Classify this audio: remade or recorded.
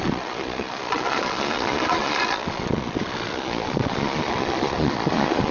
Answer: remade